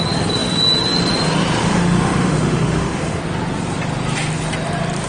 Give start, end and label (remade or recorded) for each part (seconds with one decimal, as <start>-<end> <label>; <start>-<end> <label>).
0.0-1.6 recorded; 1.6-3.2 remade; 3.2-5.1 recorded